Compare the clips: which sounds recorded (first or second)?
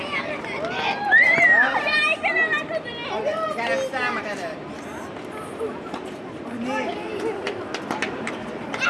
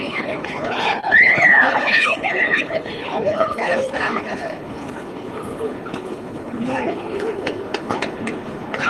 first